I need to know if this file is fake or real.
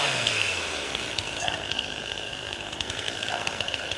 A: fake